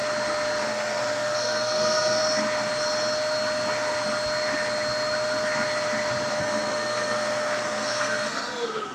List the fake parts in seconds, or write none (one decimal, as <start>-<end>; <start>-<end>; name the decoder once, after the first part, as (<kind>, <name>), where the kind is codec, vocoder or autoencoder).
0.6-2.2 (codec, SNAC); 6.3-8.9